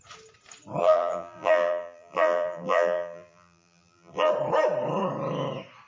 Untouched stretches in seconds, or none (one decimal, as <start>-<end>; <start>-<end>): 0.0-0.8; 4.3-5.9